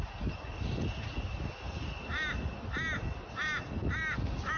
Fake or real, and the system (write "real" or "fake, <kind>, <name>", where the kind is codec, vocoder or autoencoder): real